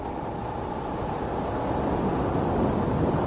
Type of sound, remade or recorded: recorded